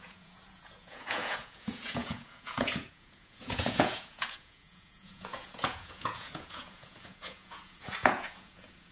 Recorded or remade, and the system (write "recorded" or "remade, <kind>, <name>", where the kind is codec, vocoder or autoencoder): remade, vocoder, Vocos